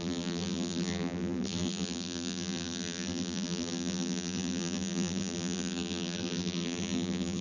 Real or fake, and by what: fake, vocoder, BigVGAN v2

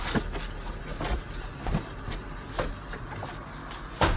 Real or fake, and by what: real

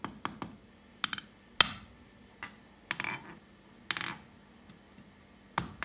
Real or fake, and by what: real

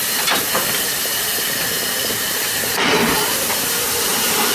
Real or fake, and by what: fake, vocoder, BigVGAN v2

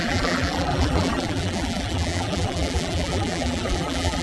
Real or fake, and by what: fake, vocoder, BigVGAN v2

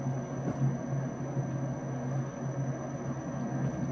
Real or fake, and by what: real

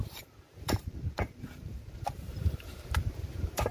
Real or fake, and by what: fake, vocoder, BigVGAN v2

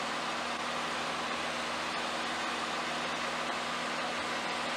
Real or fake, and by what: real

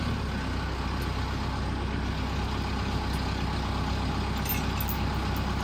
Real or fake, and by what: real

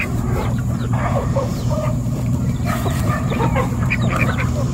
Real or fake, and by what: fake, vocoder, BigVGAN v2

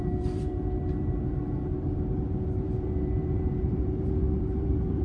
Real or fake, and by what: fake, vocoder, BigVGAN v2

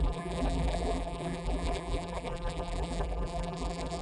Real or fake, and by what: fake, vocoder, BigVGAN v2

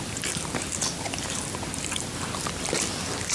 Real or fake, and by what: fake, vocoder, BigVGAN v2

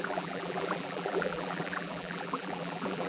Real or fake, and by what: fake, vocoder, BigVGAN v2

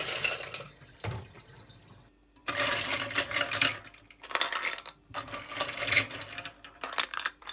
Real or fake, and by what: fake, vocoder, BigVGAN v2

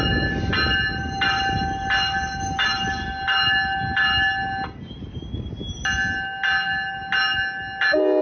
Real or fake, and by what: real